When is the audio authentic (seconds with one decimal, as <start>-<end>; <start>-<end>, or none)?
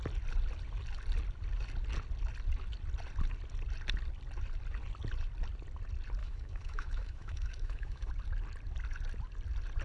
0.0-6.2; 8.1-9.8